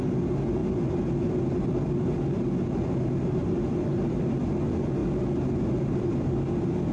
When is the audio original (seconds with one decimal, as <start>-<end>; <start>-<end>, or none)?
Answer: 0.0-6.9